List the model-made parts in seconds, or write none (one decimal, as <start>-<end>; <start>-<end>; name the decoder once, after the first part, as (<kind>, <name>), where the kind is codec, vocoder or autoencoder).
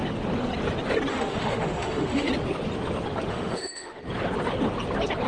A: 1.1-2.3 (autoencoder, DAC-VAE); 3.3-4.0